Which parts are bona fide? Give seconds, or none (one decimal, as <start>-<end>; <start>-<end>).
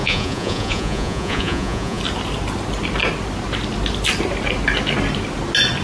2.0-5.8